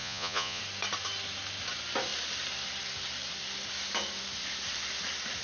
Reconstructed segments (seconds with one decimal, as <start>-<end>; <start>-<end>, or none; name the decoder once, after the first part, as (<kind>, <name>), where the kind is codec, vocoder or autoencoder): 0.0-0.6 (vocoder, Vocos)

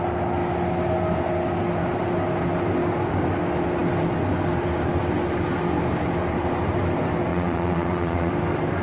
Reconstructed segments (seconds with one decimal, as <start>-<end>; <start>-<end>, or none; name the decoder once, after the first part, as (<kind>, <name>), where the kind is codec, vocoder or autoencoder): 7.3-8.3 (vocoder, Vocos)

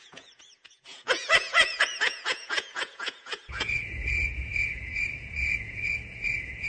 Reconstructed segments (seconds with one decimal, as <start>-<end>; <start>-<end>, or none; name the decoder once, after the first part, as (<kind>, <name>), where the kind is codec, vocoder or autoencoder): 0.0-6.7 (vocoder, Vocos)

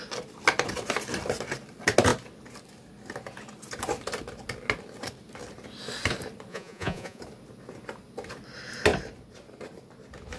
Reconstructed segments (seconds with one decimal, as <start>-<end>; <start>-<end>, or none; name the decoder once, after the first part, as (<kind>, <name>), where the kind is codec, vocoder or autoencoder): 6.5-7.2 (vocoder, Vocos)

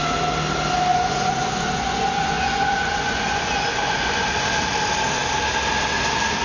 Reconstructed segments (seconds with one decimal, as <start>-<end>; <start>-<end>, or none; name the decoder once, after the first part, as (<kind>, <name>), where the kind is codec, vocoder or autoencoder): 0.9-4.3 (vocoder, Vocos)

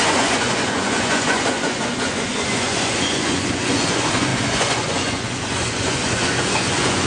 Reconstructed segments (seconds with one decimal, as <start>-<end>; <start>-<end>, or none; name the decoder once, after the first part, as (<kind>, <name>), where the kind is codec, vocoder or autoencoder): 0.0-7.1 (vocoder, Vocos)

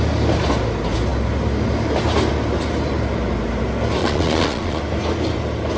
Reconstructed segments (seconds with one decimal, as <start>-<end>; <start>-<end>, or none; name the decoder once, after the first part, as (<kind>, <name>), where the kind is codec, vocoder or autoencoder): 4.0-4.8 (vocoder, Vocos)